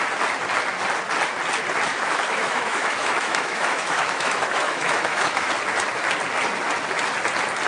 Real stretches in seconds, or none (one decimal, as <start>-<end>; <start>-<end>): 0.0-1.9; 5.5-7.7